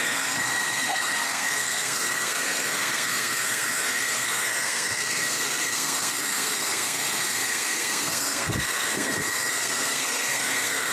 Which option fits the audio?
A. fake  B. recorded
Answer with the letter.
A